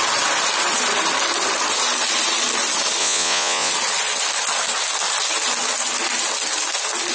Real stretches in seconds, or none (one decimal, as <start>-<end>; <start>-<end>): 0.0-3.0; 3.7-7.1